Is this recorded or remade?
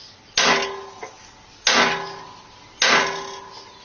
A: recorded